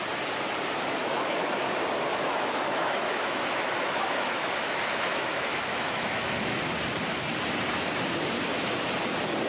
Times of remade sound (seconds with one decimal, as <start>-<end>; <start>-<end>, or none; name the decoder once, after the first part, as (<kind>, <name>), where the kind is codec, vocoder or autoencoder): 1.0-1.6 (autoencoder, DAC-VAE); 2.1-6.6